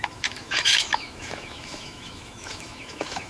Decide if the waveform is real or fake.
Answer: fake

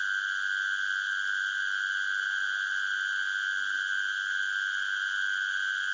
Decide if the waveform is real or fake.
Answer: real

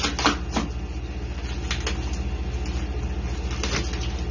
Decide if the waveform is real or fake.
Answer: real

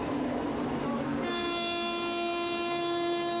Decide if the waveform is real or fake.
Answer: fake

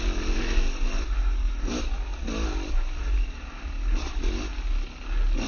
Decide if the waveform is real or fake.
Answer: real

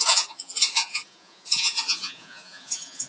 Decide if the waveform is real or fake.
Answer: fake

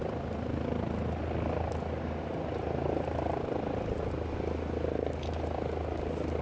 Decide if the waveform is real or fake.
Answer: real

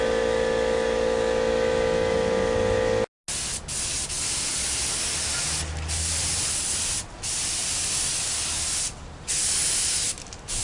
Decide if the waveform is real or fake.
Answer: real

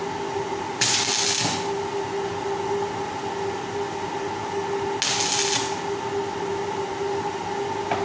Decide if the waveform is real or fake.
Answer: real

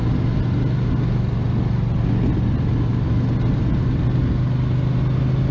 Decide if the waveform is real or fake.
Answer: real